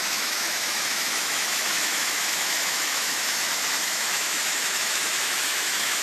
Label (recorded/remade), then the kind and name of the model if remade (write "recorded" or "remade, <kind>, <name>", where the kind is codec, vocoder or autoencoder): remade, autoencoder, DAC-VAE